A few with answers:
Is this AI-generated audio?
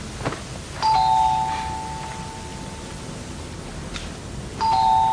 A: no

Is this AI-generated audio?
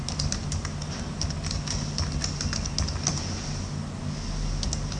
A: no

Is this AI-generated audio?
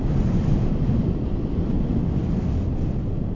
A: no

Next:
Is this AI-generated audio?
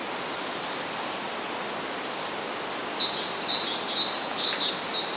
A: no